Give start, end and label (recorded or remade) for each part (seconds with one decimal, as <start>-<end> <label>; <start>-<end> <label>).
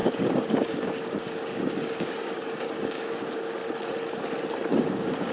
0.0-3.6 remade; 3.6-4.7 recorded; 4.7-5.3 remade